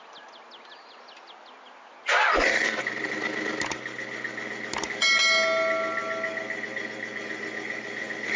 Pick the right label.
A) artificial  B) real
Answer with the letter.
B